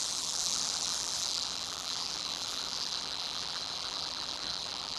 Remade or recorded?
remade